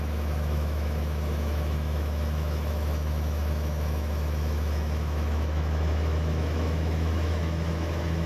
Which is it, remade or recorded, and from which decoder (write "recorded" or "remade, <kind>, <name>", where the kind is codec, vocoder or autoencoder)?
remade, autoencoder, DAC-VAE